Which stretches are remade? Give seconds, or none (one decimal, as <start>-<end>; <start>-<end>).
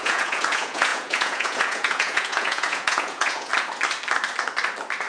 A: 0.0-3.5